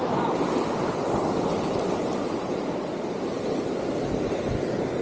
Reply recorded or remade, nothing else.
recorded